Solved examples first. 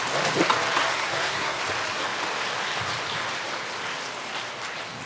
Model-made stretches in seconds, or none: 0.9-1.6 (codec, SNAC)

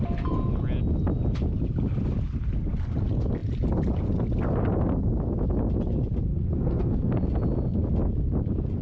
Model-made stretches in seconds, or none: 6.3-7.1 (codec, SNAC)

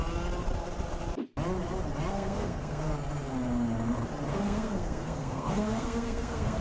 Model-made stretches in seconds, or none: 2.1-2.8 (codec, SNAC); 4.3-6.6

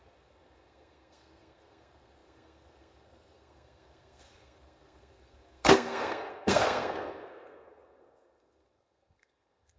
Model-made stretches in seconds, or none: 0.0-9.8 (codec, SNAC)

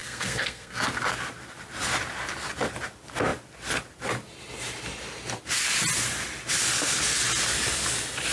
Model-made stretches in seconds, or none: 0.0-0.8 (codec, SNAC)

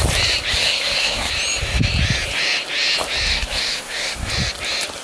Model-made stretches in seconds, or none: 0.5-1.3 (codec, SNAC); 3.3-4.3